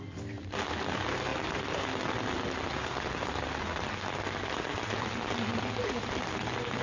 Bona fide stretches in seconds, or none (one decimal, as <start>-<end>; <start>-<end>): 0.0-6.8